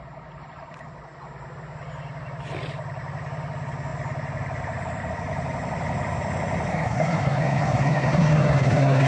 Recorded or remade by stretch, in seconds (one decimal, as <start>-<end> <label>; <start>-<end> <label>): 0.0-6.7 recorded; 6.7-9.1 remade